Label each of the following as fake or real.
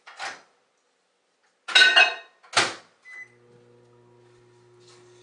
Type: real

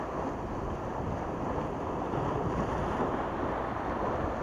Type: real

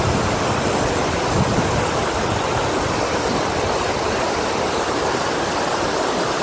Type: real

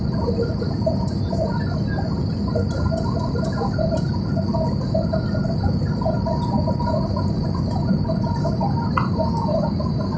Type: real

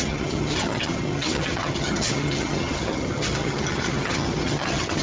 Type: fake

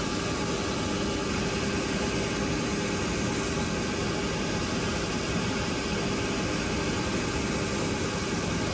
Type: real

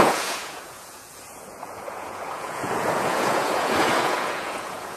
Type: fake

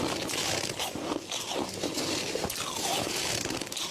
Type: real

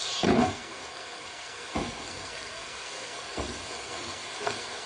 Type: fake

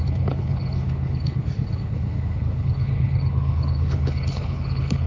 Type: fake